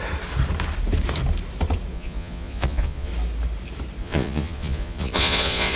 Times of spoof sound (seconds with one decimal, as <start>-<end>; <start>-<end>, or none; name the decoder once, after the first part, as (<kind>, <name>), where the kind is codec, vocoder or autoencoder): 1.9-3.1 (vocoder, Vocos); 4.0-5.8